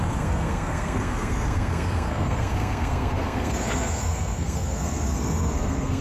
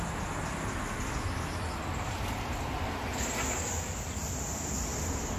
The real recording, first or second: second